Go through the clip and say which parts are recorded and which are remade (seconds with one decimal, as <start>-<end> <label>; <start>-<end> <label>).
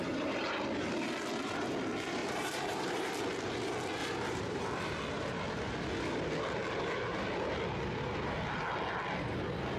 0.0-2.2 recorded; 2.2-3.2 remade; 3.2-4.0 recorded; 4.0-4.6 remade; 4.6-9.8 recorded